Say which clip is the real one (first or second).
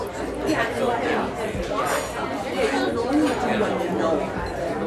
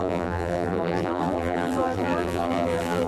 first